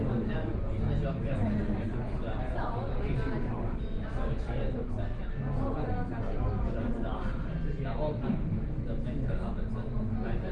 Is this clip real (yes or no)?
yes